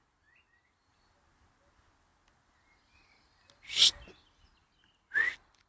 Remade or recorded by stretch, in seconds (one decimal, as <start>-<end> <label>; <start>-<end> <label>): 0.0-5.7 recorded